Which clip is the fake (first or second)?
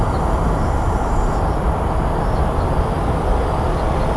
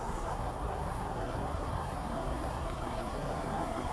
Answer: second